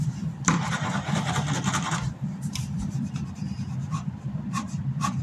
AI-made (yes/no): yes